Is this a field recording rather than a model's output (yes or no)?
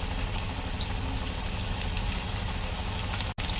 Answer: yes